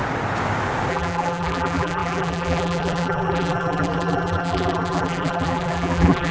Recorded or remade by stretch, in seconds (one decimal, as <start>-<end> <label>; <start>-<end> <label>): 0.0-0.9 recorded; 0.9-6.3 remade